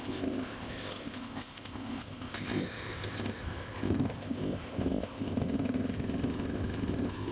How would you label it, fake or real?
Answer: fake